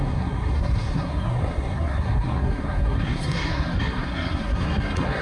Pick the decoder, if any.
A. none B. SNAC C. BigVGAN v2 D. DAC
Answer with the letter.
B